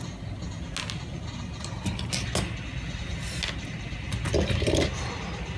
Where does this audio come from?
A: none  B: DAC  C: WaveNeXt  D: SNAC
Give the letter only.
A